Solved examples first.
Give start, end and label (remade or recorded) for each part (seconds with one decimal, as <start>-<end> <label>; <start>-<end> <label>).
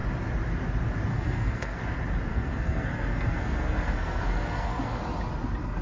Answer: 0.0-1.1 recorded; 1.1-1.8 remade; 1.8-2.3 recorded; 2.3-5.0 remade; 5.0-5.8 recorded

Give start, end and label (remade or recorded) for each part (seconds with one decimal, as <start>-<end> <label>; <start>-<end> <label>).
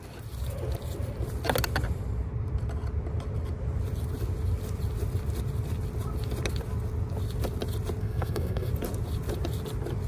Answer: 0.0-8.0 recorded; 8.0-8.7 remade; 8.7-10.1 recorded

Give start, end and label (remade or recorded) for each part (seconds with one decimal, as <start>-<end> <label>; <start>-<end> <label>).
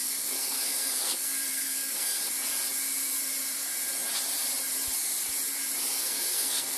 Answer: 0.0-2.2 remade; 2.2-5.9 recorded; 5.9-6.8 remade